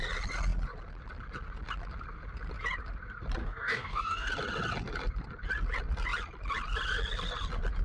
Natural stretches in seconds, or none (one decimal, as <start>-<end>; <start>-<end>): 0.0-3.4; 4.3-7.8